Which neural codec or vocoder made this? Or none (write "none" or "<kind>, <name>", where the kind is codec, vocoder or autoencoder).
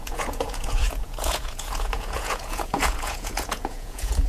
vocoder, Vocos